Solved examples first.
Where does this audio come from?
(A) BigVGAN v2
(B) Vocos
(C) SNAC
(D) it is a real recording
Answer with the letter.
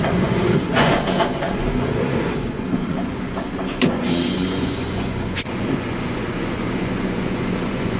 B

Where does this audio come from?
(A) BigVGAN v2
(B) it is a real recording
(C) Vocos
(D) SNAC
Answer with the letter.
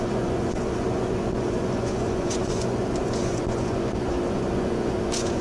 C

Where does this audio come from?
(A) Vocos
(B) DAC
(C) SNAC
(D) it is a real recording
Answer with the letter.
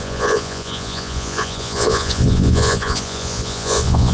A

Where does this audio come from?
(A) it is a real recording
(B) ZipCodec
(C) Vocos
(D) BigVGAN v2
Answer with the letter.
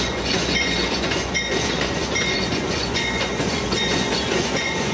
C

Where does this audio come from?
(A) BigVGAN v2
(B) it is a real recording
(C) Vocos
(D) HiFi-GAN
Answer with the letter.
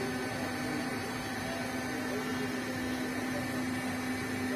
B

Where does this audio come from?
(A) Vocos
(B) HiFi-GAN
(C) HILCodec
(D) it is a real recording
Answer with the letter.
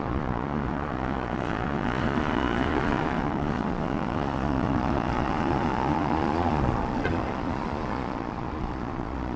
A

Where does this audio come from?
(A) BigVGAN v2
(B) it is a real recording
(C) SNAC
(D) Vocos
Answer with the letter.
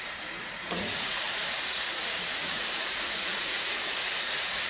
D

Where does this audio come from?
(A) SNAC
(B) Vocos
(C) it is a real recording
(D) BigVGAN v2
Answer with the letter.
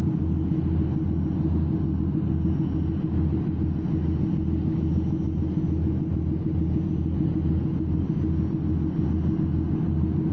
C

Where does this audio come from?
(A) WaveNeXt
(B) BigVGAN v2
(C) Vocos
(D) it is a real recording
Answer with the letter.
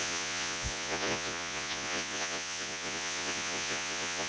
C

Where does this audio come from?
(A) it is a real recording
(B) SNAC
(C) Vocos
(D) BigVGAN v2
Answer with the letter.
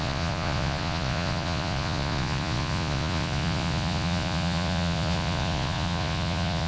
C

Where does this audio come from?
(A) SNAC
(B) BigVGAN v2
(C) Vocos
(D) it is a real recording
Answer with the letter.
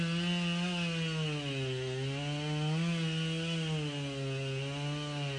D